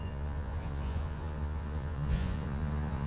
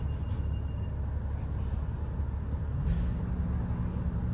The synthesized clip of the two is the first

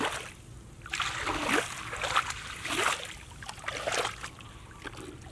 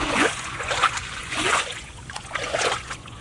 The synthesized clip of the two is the second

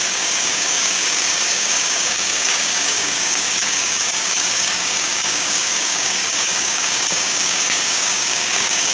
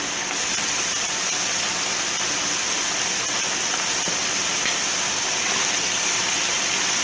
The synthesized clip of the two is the first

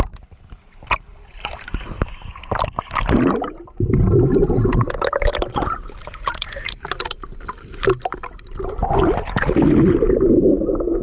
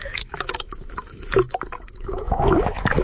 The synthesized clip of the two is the second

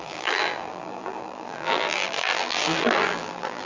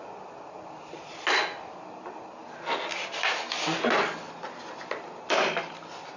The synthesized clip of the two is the first